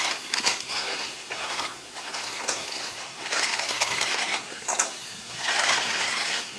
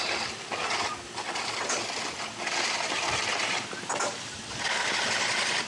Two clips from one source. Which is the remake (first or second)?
first